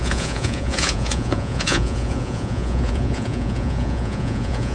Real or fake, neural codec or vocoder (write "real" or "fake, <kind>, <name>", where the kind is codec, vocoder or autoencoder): fake, vocoder, Vocos